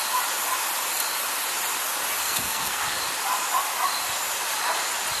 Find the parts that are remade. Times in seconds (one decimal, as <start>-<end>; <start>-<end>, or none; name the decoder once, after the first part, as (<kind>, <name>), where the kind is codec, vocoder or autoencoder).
2.2-3.0 (codec, SNAC)